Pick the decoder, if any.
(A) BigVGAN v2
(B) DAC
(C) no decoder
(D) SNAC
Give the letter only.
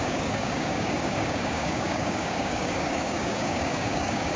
B